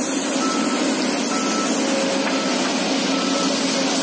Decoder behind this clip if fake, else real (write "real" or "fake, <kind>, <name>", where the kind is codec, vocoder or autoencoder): real